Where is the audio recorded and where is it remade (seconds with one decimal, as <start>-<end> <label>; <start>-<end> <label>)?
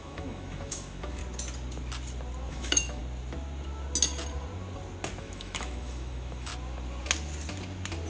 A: 0.0-1.2 remade; 1.2-2.5 recorded; 2.5-3.0 remade; 3.0-5.2 recorded; 5.2-6.5 remade; 6.5-8.1 recorded